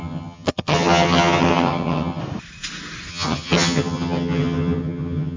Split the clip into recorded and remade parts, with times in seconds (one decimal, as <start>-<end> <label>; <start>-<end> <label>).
0.0-2.2 remade; 2.2-3.1 recorded; 3.1-5.4 remade